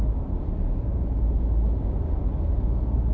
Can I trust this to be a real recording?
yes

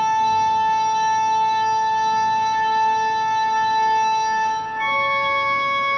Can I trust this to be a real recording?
no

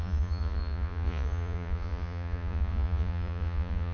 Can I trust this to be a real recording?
no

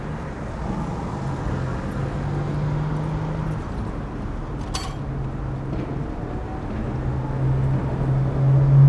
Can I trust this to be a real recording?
yes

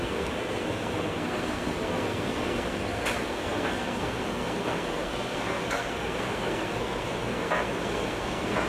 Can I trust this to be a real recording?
no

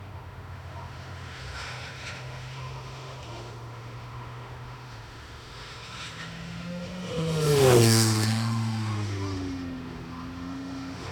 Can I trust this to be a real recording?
no